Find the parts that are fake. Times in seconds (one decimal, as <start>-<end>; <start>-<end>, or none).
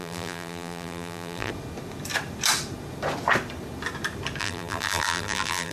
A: 0.0-1.5; 4.4-5.7